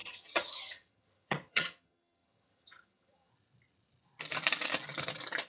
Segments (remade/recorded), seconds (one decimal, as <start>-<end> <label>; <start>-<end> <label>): 0.0-3.3 remade; 3.3-5.5 recorded